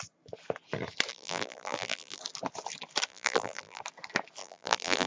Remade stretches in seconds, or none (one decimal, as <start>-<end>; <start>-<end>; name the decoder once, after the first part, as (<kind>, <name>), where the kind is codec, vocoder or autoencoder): 1.1-2.2 (vocoder, BigVGAN v2); 3.1-3.8; 4.4-5.1